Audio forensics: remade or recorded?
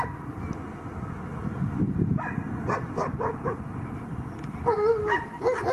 recorded